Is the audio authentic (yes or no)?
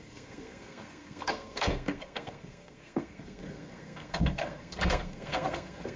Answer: no